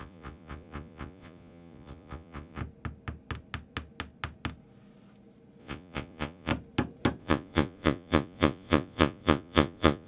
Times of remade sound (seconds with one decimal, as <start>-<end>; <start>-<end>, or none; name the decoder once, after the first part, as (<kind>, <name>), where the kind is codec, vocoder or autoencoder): 0.0-2.6 (vocoder, Vocos); 5.6-6.5; 7.2-10.1